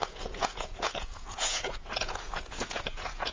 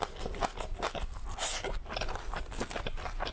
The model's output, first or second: first